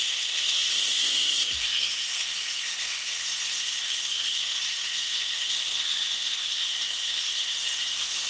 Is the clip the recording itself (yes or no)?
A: no